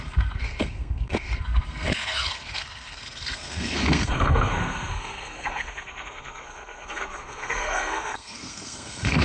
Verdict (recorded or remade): remade